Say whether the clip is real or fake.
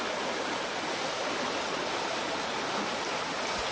real